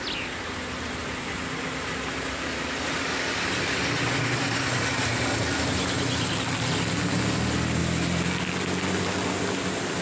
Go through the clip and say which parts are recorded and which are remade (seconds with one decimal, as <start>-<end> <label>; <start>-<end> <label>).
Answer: 0.0-10.0 recorded